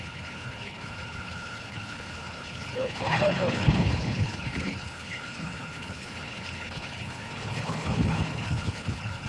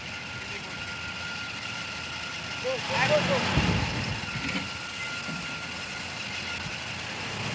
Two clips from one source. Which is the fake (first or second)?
first